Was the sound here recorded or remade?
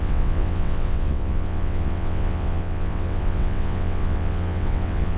remade